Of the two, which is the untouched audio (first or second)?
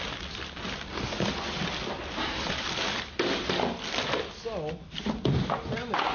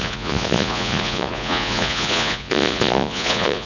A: first